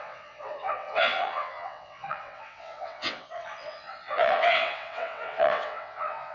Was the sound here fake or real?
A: fake